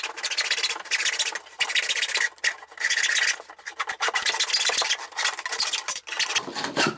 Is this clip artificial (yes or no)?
no